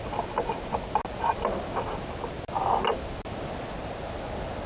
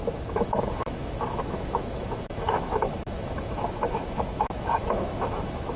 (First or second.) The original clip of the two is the first